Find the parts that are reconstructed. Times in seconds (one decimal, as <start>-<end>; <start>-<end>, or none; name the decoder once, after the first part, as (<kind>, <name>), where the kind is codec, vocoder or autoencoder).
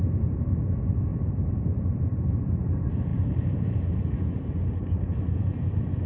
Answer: 1.1-2.0 (vocoder, BigVGAN v2); 3.1-4.5